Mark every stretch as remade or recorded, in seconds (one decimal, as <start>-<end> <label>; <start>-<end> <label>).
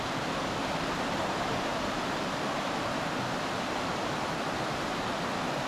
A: 0.0-5.7 recorded